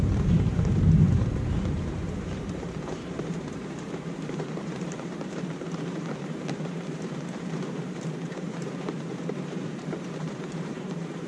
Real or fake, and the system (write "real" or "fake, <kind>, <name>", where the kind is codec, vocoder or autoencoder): fake, vocoder, BigVGAN v2